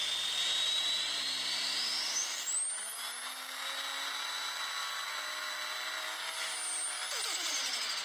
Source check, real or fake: real